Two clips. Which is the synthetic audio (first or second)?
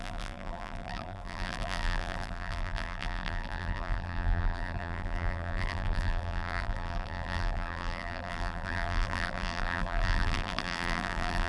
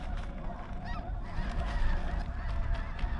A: first